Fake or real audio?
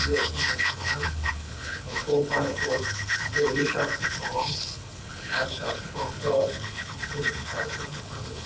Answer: fake